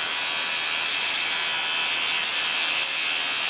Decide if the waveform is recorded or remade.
recorded